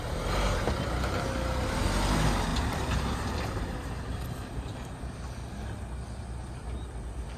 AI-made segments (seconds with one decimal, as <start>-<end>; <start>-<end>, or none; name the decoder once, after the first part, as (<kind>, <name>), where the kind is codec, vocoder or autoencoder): 2.5-4.0 (vocoder, BigVGAN v2)